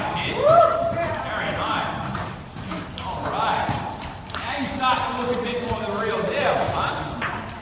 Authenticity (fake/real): fake